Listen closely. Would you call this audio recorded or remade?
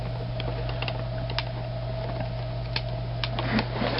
recorded